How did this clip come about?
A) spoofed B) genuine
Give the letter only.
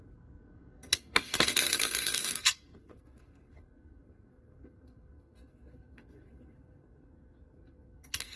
A